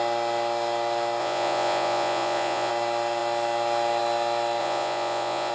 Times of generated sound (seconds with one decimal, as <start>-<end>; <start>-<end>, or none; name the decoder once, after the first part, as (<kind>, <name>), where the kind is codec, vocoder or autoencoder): 1.2-2.7 (vocoder, Vocos); 4.6-5.5